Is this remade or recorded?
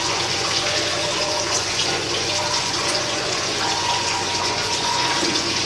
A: remade